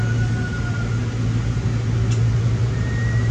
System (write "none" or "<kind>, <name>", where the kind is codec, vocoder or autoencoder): none